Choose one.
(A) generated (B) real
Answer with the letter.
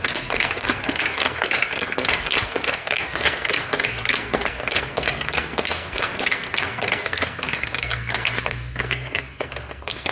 A